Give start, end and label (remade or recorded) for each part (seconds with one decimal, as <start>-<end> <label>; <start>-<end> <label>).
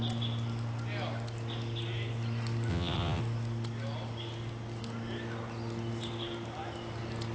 0.0-2.7 recorded; 2.7-3.2 remade; 3.2-7.3 recorded